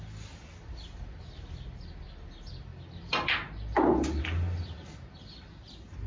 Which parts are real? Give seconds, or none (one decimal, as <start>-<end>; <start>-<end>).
0.0-6.1